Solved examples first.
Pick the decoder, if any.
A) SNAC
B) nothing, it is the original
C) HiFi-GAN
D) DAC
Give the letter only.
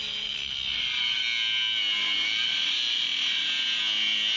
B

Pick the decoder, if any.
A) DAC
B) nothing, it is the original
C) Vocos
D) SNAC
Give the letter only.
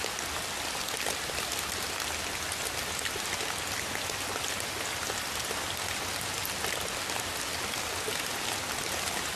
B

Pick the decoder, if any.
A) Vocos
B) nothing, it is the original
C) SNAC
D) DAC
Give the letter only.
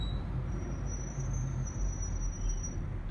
B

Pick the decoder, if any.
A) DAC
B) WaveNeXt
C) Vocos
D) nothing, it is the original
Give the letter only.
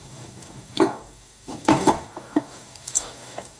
A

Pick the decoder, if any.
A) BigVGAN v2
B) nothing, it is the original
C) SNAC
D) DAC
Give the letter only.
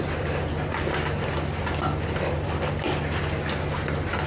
B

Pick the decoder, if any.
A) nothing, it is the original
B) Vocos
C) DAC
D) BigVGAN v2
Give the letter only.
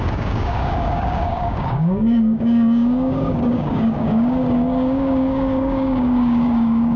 C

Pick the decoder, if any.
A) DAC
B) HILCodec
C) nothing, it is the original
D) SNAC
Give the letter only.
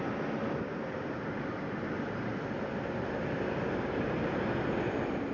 C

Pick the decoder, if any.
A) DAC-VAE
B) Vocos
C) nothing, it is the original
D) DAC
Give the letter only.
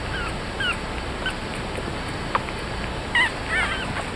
C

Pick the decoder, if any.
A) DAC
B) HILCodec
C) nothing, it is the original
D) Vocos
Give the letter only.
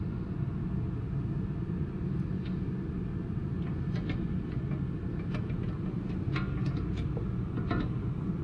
C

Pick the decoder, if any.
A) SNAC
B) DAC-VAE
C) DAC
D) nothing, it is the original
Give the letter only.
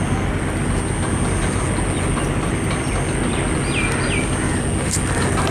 D